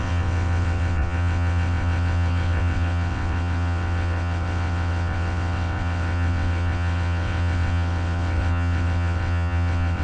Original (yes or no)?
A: no